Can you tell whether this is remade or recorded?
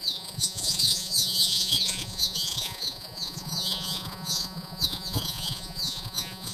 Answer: remade